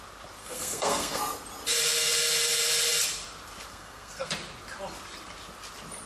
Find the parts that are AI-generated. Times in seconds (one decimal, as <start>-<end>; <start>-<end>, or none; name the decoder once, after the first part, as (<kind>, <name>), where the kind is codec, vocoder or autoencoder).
0.4-1.2 (codec, SNAC); 3.7-4.3